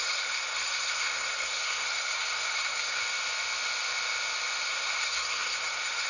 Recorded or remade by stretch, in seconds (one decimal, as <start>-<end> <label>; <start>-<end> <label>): 0.0-3.0 remade; 3.0-4.7 recorded; 4.7-6.1 remade